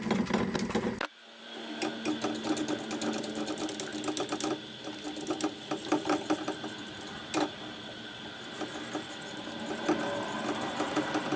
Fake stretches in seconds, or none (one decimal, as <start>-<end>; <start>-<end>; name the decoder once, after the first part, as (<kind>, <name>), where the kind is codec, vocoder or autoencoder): none